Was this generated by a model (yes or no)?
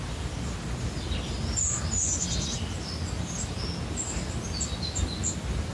no